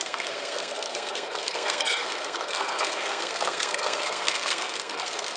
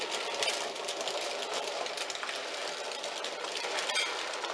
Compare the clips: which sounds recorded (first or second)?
second